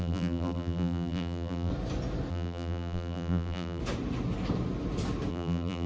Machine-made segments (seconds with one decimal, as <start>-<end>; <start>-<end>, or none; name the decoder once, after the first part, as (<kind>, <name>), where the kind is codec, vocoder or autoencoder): 0.0-1.7 (vocoder, BigVGAN v2); 2.3-3.8; 5.3-5.9